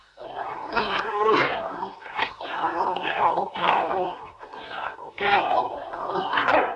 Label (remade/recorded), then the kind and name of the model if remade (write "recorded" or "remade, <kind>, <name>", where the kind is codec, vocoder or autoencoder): remade, codec, SNAC